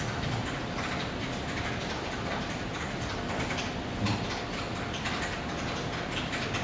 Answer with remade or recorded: recorded